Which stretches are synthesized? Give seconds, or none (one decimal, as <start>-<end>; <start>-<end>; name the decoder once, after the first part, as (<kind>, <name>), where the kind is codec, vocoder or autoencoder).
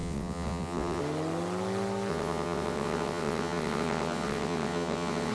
0.0-1.0 (vocoder, WaveNeXt); 2.1-5.3